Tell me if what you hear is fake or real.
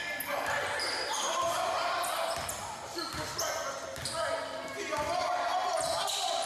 real